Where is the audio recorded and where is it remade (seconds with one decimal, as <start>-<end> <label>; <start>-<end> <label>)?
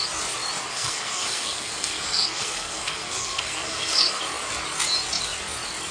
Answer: 0.0-0.7 recorded; 0.7-4.2 remade; 4.2-5.9 recorded